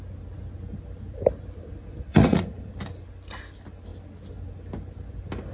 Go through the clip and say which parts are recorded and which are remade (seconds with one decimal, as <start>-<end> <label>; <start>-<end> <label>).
0.0-2.1 recorded; 2.1-2.7 remade; 2.7-5.5 recorded